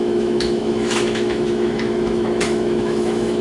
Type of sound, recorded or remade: remade